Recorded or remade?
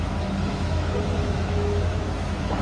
remade